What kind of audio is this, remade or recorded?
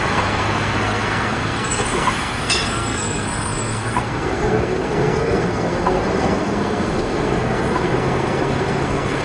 remade